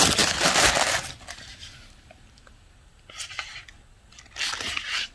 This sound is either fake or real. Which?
real